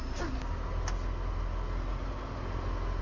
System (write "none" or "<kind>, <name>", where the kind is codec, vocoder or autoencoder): none